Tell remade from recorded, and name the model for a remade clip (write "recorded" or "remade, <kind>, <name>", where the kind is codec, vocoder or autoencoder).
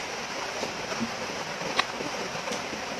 recorded